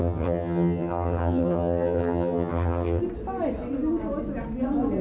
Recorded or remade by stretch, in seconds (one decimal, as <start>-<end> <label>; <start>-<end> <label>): 0.0-3.0 remade; 3.0-5.0 recorded